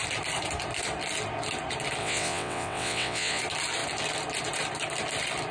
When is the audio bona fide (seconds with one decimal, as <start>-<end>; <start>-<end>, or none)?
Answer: 0.0-2.0; 3.4-5.5